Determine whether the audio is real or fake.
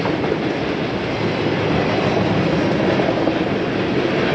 real